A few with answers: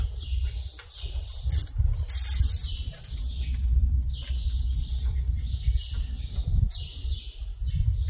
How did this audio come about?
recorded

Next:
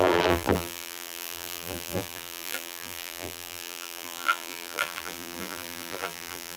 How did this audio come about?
remade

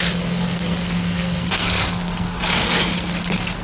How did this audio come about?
remade